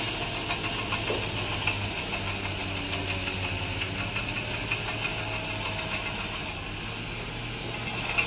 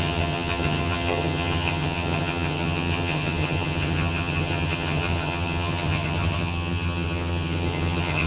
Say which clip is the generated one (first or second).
second